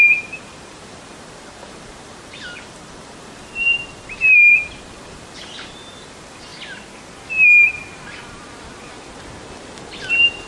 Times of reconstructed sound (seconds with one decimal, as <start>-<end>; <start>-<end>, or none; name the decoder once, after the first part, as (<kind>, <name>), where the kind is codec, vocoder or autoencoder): 0.0-6.5 (vocoder, BigVGAN v2); 10.1-10.5